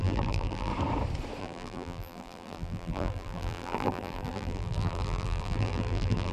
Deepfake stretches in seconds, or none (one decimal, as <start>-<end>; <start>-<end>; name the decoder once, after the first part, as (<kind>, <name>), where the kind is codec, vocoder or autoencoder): 0.0-0.7 (vocoder, BigVGAN v2); 1.4-6.3

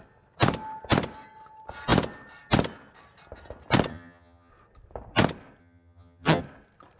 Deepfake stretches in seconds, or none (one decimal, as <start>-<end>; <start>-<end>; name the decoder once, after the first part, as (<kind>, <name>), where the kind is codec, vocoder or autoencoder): 3.9-4.5 (vocoder, HiFi-GAN); 5.6-6.4